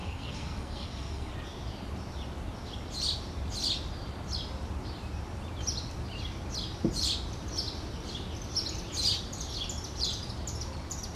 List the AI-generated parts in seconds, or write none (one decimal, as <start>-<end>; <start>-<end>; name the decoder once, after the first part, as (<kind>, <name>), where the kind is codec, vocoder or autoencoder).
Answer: 0.0-1.3 (codec, SNAC)